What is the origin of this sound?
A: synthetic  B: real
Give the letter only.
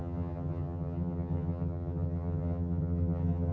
A